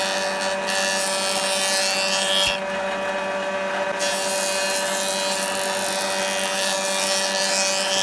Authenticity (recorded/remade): recorded